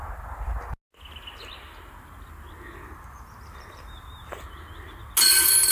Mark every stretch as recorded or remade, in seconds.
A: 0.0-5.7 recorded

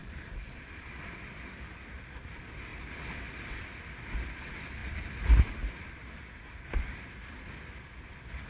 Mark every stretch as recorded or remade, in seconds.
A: 0.0-1.6 remade; 1.6-4.8 recorded; 4.8-5.5 remade; 5.5-8.5 recorded

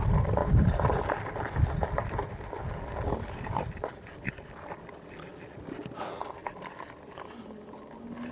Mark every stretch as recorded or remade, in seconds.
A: 0.0-0.4 recorded; 0.4-1.0 remade; 1.0-8.3 recorded